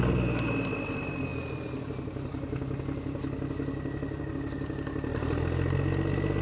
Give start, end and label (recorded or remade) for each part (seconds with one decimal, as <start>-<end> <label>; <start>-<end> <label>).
0.0-6.4 recorded